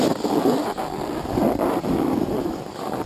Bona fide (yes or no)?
yes